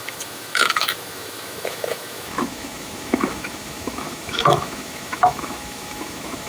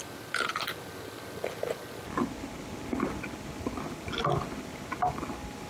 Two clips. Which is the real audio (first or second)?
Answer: second